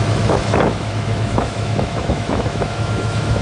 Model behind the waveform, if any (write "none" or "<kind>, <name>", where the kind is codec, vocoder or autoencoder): autoencoder, DAC-VAE